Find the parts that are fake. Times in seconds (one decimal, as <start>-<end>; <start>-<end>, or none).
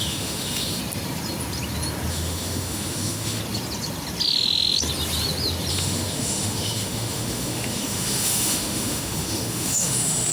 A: 0.0-0.8; 2.1-3.4; 5.7-10.3